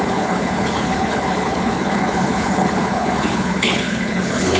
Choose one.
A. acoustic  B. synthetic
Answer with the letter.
B